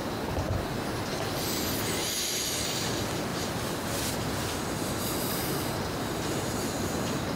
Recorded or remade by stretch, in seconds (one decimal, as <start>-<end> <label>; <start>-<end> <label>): 0.0-7.4 recorded